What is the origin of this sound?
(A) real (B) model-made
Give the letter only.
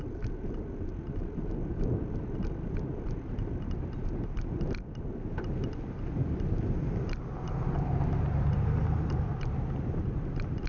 A